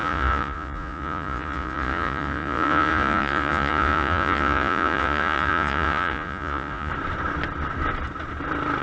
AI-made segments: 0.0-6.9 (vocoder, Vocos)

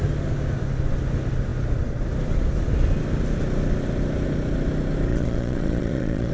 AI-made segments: 5.1-6.3 (vocoder, Vocos)

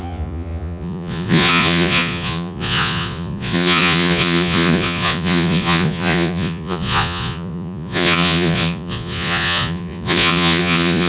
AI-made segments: 0.0-11.1 (vocoder, Vocos)

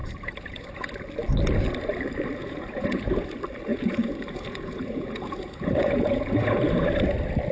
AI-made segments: 0.0-0.9 (vocoder, Vocos); 2.4-3.3; 3.7-6.6